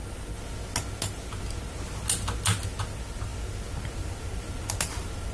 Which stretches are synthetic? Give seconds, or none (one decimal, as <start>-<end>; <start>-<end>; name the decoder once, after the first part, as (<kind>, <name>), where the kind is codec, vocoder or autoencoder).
none